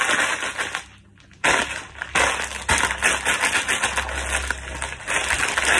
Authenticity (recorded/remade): recorded